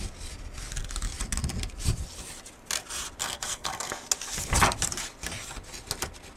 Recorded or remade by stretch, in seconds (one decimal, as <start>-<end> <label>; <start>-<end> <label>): 0.0-3.2 recorded; 3.2-3.9 remade; 3.9-6.4 recorded